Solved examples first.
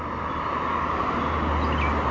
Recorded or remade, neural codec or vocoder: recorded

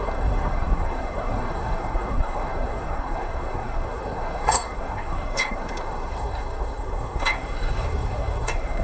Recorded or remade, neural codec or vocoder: remade, codec, SNAC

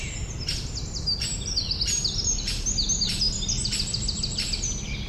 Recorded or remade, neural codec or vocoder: recorded